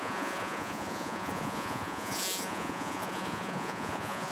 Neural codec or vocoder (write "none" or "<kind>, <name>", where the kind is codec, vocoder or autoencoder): vocoder, Vocos